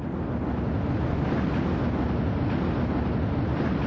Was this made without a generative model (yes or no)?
yes